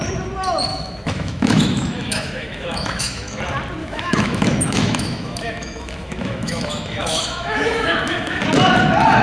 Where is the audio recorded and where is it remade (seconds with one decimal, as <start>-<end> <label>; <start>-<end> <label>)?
0.0-0.7 recorded; 0.7-3.4 remade; 3.4-3.8 recorded; 3.8-8.4 remade; 8.4-9.2 recorded